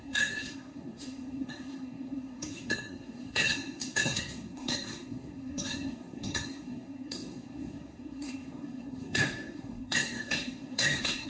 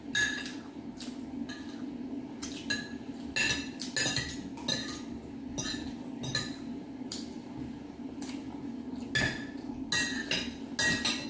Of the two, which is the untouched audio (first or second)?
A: second